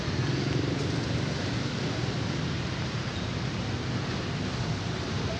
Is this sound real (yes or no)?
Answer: yes